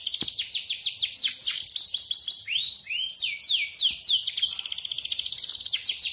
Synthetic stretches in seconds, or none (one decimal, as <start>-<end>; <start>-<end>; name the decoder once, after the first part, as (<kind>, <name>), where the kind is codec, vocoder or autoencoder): none